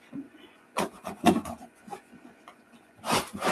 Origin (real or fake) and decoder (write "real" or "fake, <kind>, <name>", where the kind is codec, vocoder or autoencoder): fake, vocoder, Vocos